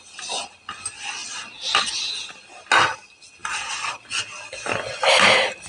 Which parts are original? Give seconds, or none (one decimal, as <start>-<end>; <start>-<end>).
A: 0.0-5.7